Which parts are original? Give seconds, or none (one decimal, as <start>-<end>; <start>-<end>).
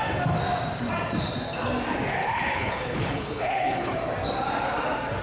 0.0-2.2; 4.0-5.2